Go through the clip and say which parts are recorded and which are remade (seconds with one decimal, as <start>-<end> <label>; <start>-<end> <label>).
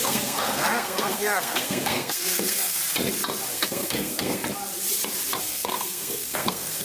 0.0-2.8 remade; 2.8-3.5 recorded; 3.5-4.4 remade; 4.4-5.4 recorded; 5.4-6.8 remade